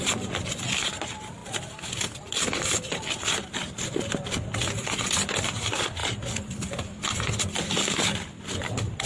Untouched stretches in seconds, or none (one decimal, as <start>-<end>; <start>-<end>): 0.0-9.1